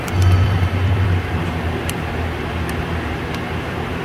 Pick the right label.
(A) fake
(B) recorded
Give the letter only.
A